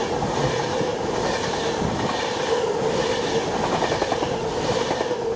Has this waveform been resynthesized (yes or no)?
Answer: no